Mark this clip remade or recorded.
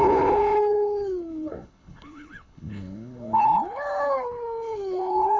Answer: remade